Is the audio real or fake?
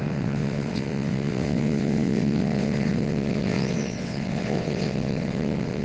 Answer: fake